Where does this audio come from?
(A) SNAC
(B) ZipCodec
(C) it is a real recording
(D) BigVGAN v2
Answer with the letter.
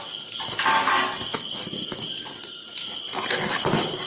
C